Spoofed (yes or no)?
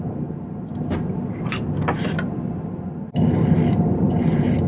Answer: no